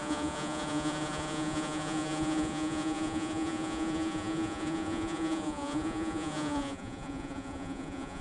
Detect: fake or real fake